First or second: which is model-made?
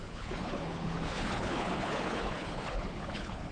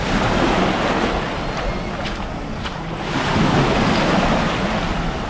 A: first